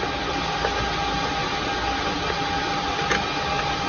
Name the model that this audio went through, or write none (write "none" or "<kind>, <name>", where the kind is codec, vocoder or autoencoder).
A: none